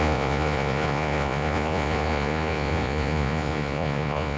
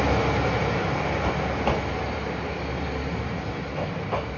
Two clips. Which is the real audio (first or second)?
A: second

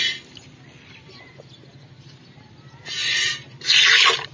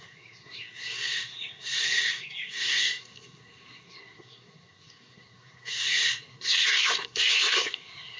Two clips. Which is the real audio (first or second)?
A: first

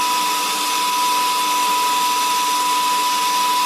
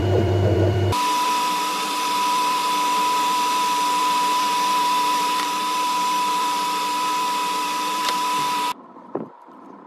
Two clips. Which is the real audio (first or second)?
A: first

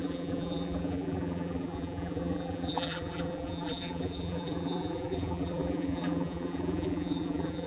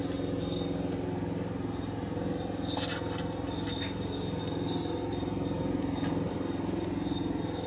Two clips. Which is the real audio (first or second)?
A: second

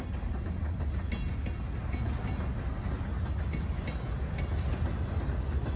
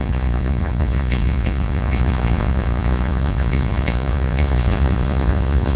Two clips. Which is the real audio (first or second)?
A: first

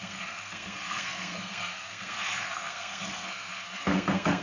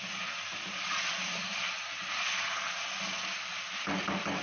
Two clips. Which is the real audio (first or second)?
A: second